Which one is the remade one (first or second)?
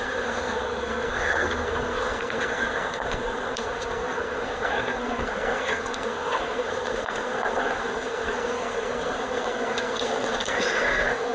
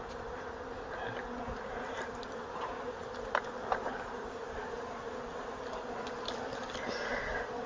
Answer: first